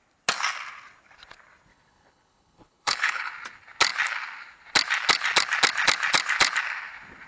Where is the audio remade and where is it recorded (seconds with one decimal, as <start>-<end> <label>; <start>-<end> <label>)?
0.0-1.7 recorded; 1.7-3.3 remade; 3.3-7.3 recorded

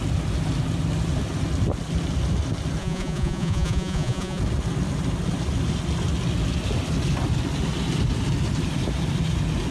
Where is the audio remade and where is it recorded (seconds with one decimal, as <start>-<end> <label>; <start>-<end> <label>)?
0.0-2.8 recorded; 2.8-4.4 remade; 4.4-9.7 recorded

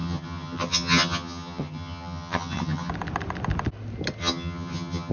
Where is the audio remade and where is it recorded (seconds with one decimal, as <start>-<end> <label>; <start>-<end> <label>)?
0.0-2.9 remade; 2.9-4.2 recorded; 4.2-5.1 remade

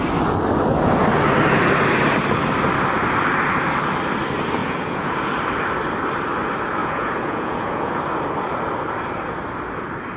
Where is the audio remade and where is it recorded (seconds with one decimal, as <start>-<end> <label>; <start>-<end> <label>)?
0.0-4.6 recorded; 4.6-5.3 remade; 5.3-6.8 recorded; 6.8-7.9 remade; 7.9-10.2 recorded

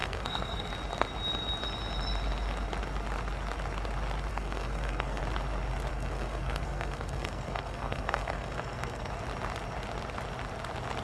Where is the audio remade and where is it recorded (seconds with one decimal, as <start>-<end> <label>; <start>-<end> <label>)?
0.0-0.7 remade; 0.7-4.3 recorded; 4.3-5.2 remade; 5.2-5.9 recorded; 5.9-9.1 remade; 9.1-11.0 recorded

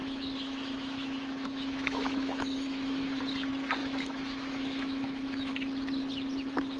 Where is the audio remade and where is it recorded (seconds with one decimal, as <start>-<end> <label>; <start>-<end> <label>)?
0.0-3.2 remade; 3.2-3.8 recorded; 3.8-5.5 remade; 5.5-6.8 recorded